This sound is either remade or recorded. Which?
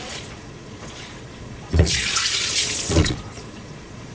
remade